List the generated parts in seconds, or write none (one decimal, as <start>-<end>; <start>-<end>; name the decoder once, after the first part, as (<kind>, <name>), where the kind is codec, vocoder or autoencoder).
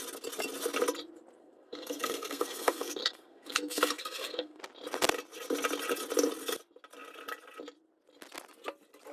1.4-4.6 (codec, SNAC)